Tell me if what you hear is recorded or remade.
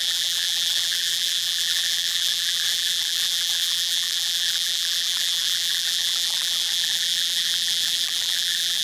remade